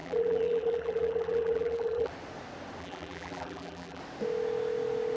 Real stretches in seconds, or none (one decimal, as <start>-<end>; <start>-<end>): 2.1-2.8; 4.0-5.2